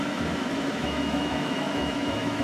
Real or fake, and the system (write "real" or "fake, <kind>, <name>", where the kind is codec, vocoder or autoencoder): fake, autoencoder, DAC-VAE